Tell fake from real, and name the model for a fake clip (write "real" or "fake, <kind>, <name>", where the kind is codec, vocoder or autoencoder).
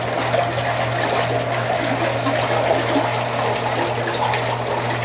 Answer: real